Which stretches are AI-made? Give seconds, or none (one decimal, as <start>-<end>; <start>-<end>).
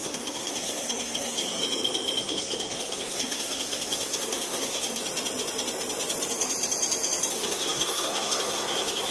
0.0-1.6; 2.2-5.0; 7.3-9.1